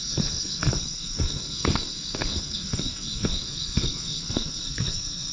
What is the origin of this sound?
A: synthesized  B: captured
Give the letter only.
A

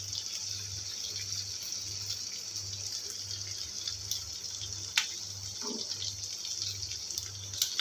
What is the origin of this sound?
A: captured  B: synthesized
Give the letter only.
A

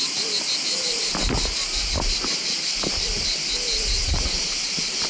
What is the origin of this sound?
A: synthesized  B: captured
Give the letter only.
B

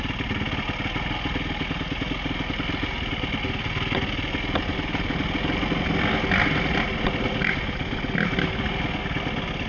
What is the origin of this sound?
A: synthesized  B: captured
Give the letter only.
B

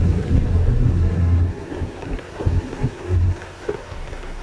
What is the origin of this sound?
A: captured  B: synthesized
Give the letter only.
B